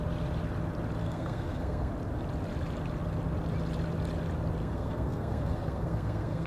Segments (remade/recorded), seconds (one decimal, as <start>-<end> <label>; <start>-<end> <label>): 0.0-1.0 recorded; 1.0-1.9 remade; 1.9-4.6 recorded; 4.6-6.5 remade